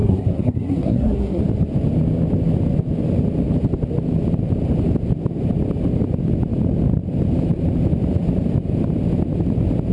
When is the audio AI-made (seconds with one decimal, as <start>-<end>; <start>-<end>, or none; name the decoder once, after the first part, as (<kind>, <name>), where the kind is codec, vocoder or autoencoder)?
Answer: 0.0-1.4 (codec, SNAC)